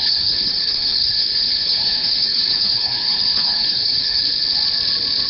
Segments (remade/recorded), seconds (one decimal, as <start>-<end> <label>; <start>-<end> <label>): 0.0-4.2 remade; 4.2-5.3 recorded